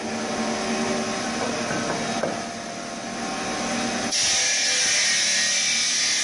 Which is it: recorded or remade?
recorded